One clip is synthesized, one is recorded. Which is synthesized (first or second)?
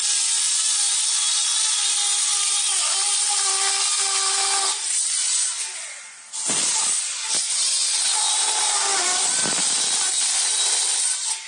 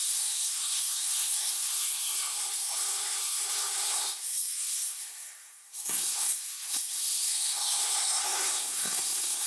second